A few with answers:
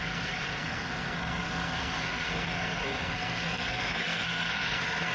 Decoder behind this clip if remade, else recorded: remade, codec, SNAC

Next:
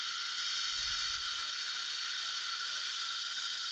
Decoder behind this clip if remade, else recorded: recorded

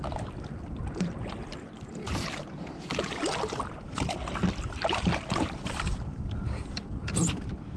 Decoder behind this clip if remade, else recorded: recorded